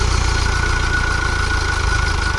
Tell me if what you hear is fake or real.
real